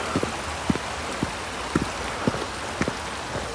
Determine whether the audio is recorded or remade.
recorded